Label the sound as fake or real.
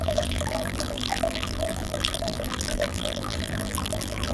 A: fake